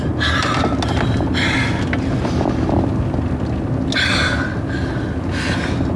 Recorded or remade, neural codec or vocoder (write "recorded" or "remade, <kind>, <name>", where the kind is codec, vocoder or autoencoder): recorded